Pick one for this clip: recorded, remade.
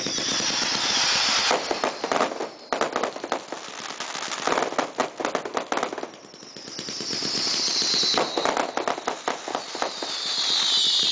recorded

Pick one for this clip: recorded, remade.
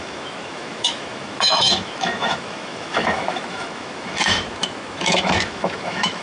remade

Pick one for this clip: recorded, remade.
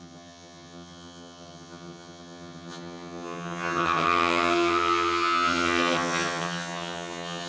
remade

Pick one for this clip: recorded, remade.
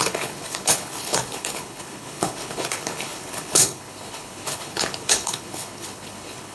remade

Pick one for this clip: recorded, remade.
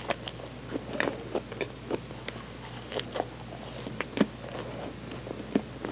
recorded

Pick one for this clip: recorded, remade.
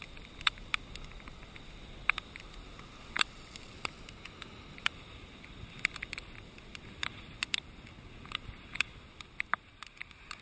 recorded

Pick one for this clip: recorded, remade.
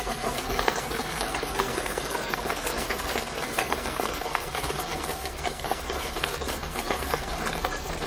remade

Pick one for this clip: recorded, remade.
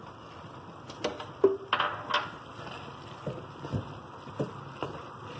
recorded